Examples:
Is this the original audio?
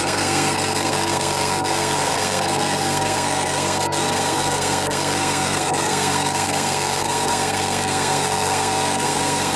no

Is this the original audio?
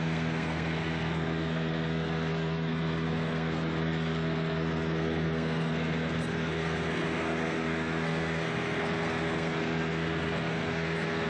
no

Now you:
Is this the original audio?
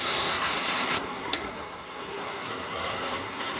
no